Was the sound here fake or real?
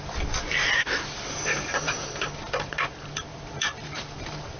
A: fake